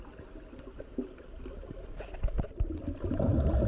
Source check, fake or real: fake